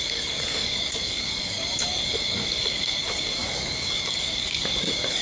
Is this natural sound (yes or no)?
no